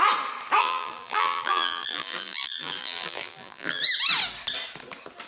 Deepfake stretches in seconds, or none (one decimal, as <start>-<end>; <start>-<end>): 0.6-3.8

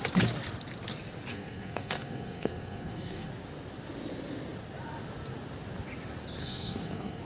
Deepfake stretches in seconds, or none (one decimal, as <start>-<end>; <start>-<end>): 1.3-3.3; 6.4-7.2

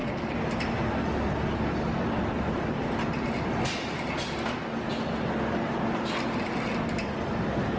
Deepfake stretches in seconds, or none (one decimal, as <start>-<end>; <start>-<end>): none

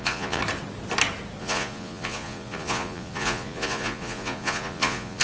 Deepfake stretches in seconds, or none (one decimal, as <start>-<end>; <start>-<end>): 0.0-0.4; 1.4-5.2